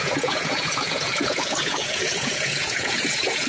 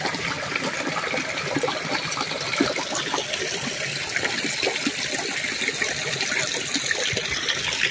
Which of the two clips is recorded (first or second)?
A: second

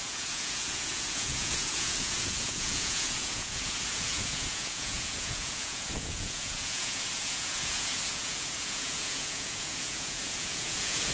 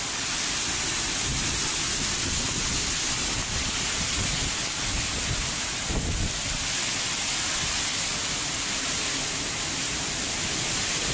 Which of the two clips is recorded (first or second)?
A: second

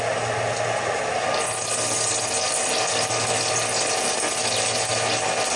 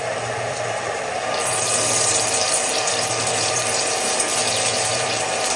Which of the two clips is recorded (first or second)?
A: first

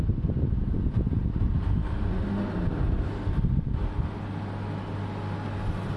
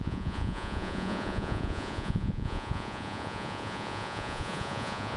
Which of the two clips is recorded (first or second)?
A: first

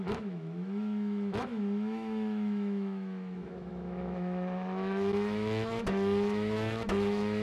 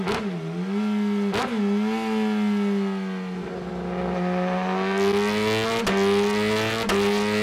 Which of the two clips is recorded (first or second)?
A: second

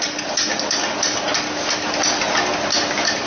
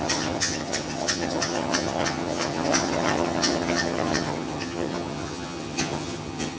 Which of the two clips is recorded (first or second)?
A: first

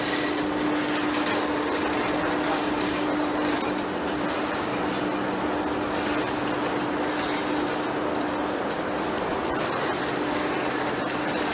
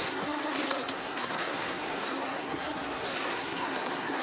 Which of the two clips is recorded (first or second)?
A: first